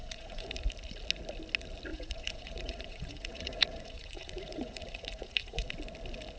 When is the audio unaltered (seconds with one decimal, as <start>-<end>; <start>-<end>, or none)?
0.5-1.9; 5.7-6.4